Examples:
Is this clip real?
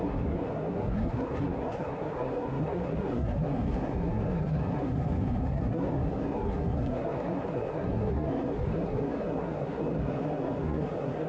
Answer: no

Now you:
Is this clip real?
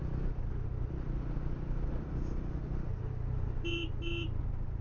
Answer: yes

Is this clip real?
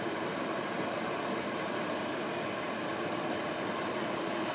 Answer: no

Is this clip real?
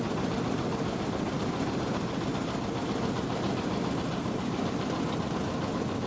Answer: yes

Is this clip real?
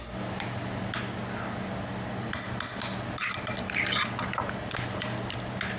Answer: yes